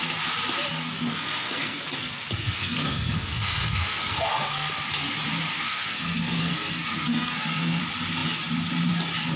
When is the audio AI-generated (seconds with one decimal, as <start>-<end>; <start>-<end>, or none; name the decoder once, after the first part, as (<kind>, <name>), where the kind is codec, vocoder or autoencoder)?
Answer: 0.7-4.7 (codec, SNAC); 5.5-7.8